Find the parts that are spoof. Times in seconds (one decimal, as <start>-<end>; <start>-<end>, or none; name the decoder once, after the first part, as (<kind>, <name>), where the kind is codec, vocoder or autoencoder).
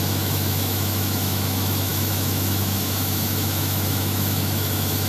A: 0.0-5.1 (autoencoder, DAC-VAE)